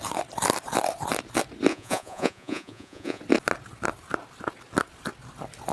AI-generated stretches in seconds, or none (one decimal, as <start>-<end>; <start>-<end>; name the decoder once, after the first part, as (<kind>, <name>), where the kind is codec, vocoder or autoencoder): 1.7-3.2 (vocoder, Vocos)